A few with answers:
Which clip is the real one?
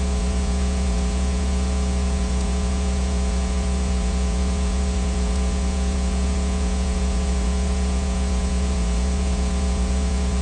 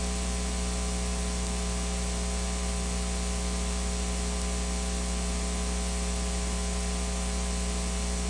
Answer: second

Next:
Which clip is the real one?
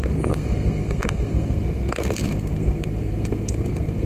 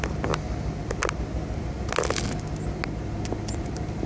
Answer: second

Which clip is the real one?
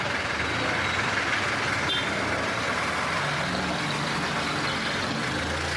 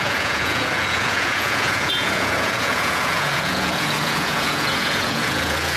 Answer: first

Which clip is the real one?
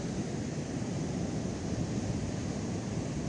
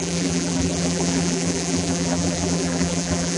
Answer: first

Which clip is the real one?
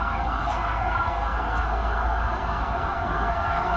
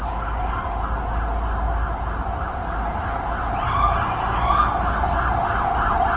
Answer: second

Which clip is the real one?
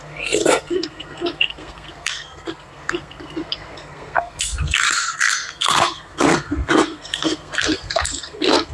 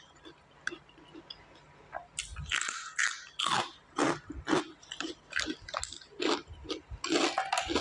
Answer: second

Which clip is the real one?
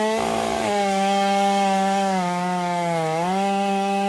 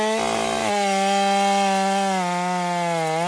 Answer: second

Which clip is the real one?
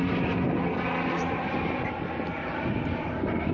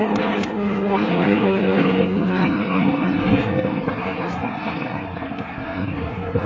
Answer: first